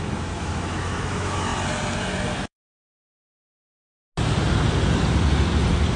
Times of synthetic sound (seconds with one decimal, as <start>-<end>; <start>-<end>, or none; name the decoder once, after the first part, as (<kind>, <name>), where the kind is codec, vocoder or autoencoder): 0.0-1.5 (autoencoder, DAC-VAE); 2.3-3.8

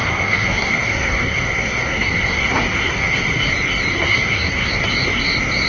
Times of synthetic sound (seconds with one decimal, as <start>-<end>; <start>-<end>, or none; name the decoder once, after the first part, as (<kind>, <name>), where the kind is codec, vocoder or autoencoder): 0.0-3.4 (codec, SNAC); 3.9-4.7

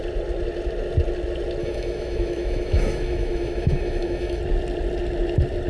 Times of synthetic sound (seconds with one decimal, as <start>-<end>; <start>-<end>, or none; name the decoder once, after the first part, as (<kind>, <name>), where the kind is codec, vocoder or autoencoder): 1.6-4.4 (autoencoder, DAC-VAE)